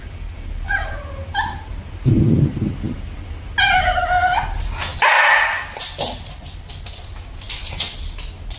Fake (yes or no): no